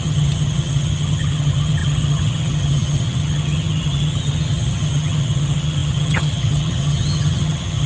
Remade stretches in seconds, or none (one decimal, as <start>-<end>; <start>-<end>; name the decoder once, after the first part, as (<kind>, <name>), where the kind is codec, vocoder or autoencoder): 0.0-7.9 (vocoder, HiFi-GAN)